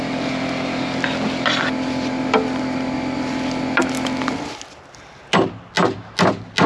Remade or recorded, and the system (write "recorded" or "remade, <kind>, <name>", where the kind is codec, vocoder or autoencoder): recorded